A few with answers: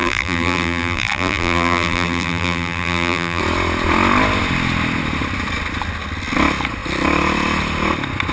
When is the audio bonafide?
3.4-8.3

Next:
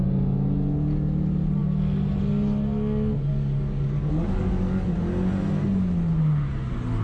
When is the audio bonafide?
0.0-3.3; 4.9-7.0

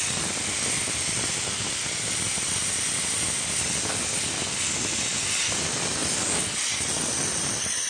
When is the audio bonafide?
0.0-7.9

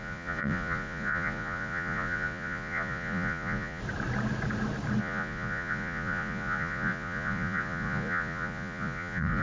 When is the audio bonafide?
3.8-5.0

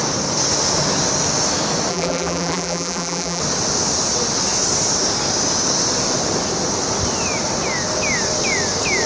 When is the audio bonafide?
0.0-1.9; 3.4-9.1